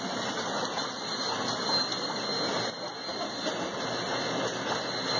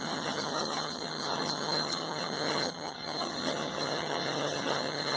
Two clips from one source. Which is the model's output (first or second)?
second